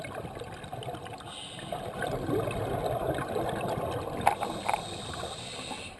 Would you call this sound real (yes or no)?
yes